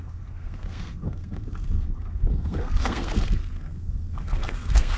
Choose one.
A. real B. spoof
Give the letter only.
B